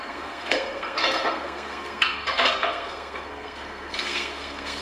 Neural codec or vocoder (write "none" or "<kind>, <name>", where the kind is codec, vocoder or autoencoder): codec, SNAC